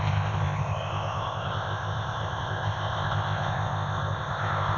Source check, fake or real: fake